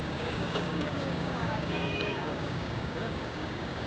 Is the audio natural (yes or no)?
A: no